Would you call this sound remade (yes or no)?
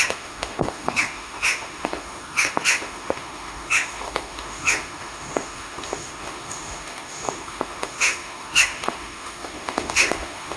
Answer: yes